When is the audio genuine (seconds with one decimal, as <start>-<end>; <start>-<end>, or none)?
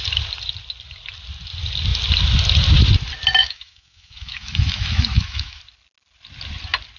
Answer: 0.0-3.4; 5.6-7.0